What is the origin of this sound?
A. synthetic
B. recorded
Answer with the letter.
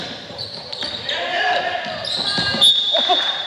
A